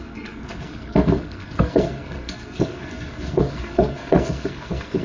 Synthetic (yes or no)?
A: yes